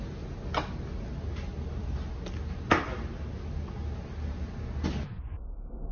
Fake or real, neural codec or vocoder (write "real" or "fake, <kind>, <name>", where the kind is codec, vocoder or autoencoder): real